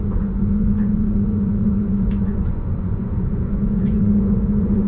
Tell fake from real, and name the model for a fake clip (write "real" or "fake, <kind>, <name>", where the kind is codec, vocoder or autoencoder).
fake, vocoder, Vocos